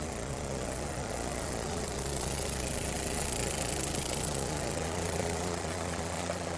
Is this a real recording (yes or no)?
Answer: no